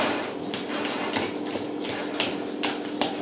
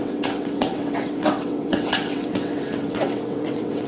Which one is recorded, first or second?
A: first